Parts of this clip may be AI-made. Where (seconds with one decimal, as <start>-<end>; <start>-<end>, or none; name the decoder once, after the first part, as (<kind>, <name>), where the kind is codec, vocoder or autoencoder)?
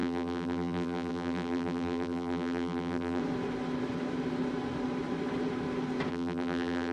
0.0-3.2 (vocoder, BigVGAN v2); 6.1-6.9